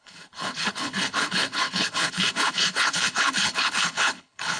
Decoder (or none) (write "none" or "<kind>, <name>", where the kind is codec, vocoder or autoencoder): codec, HILCodec